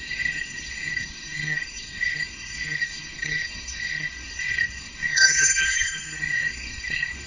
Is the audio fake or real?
fake